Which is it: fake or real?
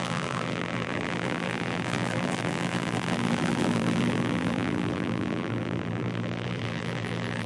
fake